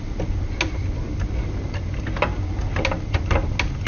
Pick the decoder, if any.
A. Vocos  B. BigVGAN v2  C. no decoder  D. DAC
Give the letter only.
C